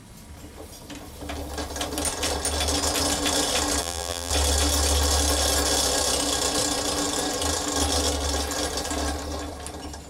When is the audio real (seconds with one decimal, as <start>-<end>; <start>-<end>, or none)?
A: 0.0-3.8; 4.3-10.1